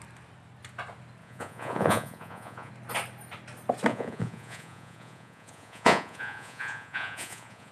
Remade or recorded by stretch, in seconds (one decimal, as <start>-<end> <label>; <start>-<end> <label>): 0.0-1.2 recorded; 1.2-2.7 remade; 2.7-3.9 recorded; 3.9-7.7 remade